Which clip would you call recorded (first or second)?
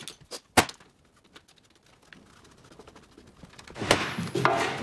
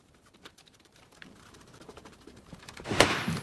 first